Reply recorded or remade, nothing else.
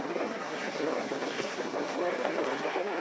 remade